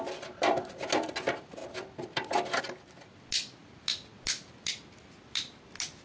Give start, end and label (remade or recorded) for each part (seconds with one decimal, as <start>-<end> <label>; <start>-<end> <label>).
0.0-6.0 recorded